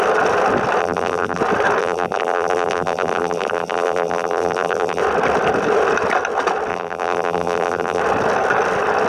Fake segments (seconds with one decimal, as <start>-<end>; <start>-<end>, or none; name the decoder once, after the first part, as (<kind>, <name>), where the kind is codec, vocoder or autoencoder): 0.8-1.4 (vocoder, BigVGAN v2); 1.8-5.0; 6.7-8.0